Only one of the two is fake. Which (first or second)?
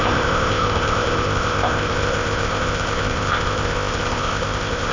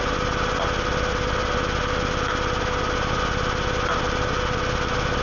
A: first